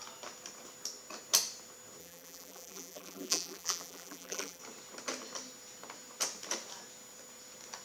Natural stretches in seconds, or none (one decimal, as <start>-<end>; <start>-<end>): 0.0-2.0; 4.6-7.8